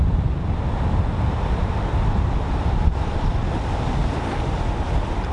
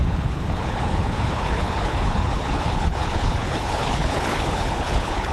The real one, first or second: first